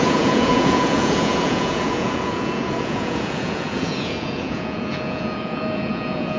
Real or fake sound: fake